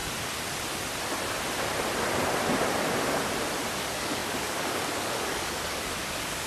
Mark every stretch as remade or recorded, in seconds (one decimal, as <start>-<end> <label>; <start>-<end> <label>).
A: 0.0-3.8 recorded; 3.8-6.5 remade